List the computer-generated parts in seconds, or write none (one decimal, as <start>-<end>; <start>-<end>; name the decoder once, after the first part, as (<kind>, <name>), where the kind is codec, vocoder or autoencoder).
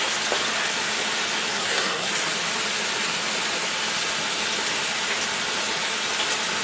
1.5-2.1 (codec, SNAC)